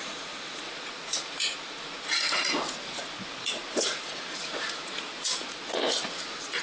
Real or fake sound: fake